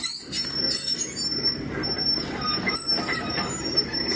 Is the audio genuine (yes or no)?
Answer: yes